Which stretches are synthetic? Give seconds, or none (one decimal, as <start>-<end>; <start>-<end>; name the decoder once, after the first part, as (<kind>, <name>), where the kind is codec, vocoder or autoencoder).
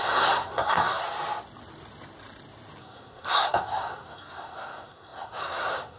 0.0-1.0 (codec, SNAC); 2.8-6.0